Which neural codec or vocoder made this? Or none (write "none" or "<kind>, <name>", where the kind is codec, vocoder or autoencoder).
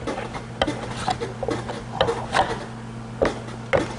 none